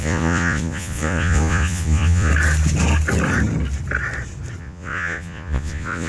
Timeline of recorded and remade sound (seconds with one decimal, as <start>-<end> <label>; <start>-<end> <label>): 0.0-2.3 remade; 2.3-4.6 recorded; 4.6-6.1 remade